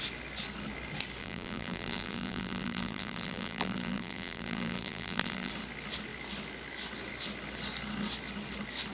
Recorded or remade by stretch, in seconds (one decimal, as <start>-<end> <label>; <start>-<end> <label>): 0.0-1.2 recorded; 1.2-5.5 remade; 5.5-8.9 recorded